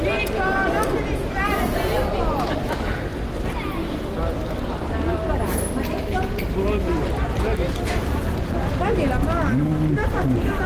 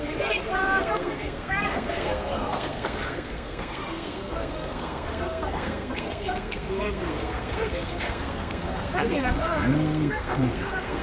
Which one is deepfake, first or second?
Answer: second